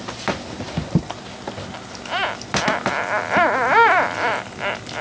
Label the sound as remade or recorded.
recorded